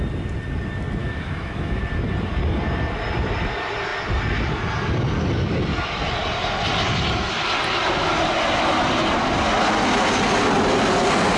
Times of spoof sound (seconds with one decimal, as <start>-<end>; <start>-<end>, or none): 1.0-1.8